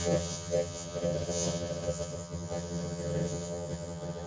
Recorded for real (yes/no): no